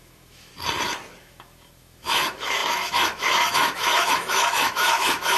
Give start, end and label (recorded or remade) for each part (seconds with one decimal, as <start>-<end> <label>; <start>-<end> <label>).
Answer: 0.0-0.5 remade; 0.5-1.2 recorded; 1.2-5.4 remade